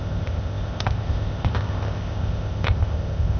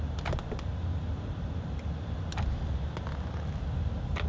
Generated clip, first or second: first